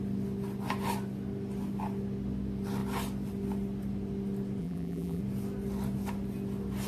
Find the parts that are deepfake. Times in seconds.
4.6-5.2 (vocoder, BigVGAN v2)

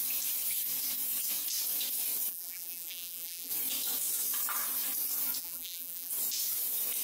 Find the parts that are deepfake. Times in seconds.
2.3-3.5 (vocoder, BigVGAN v2); 5.4-6.1